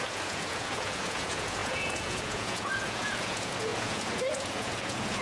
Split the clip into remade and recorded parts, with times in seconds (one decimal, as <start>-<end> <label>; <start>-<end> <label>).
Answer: 0.0-5.2 remade